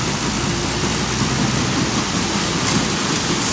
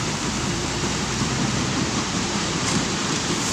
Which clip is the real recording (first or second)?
first